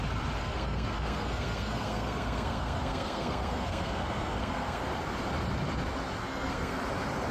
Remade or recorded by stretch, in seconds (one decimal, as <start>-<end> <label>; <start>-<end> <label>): 0.0-0.4 recorded; 0.4-4.8 remade; 4.8-6.2 recorded; 6.2-6.8 remade; 6.8-7.3 recorded